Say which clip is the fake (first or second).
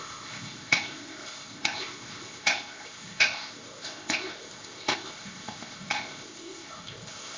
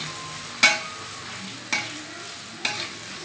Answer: first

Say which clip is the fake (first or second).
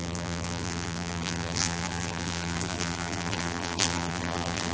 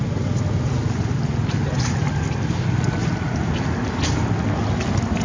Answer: first